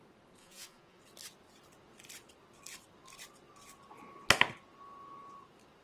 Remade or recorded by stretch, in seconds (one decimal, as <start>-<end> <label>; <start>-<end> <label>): 0.0-0.4 recorded; 0.4-1.0 remade; 1.0-5.8 recorded